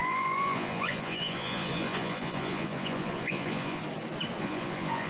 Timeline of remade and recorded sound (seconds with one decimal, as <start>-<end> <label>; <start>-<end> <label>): 0.0-3.8 remade; 3.8-4.4 recorded; 4.4-5.1 remade